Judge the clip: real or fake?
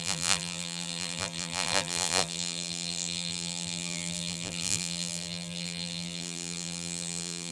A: fake